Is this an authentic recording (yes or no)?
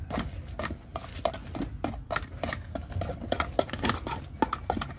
yes